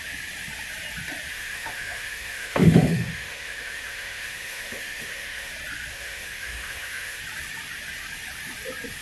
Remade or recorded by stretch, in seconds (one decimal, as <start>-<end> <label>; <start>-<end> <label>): 0.0-1.3 recorded; 1.3-5.5 remade; 5.5-5.9 recorded; 5.9-7.2 remade; 7.2-9.0 recorded